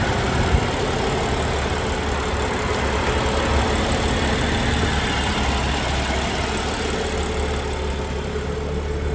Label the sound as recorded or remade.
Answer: recorded